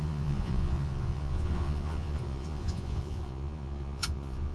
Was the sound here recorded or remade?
remade